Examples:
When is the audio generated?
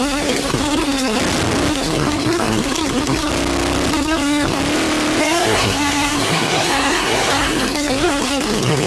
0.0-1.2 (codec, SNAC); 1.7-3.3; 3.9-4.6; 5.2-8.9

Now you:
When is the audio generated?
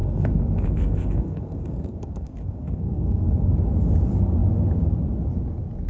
0.0-3.5 (codec, SNAC)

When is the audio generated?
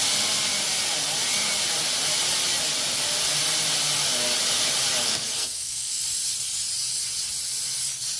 5.0-6.0 (codec, SNAC)